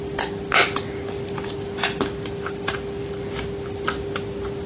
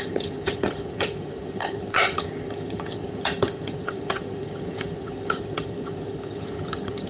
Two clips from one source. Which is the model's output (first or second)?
second